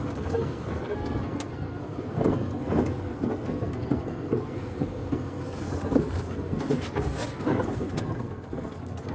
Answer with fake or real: fake